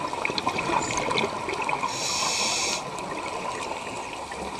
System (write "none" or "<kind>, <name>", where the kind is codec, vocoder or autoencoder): none